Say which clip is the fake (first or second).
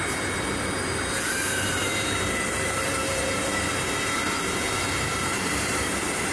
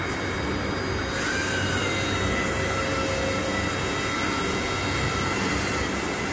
first